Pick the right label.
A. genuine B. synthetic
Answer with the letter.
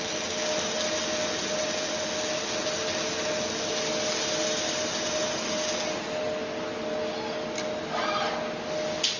A